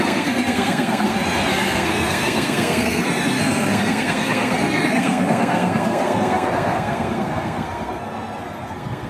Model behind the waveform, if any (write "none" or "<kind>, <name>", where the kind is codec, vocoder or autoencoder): codec, SNAC